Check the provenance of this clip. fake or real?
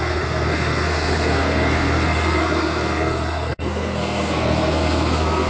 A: fake